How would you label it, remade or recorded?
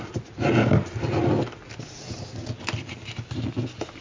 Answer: recorded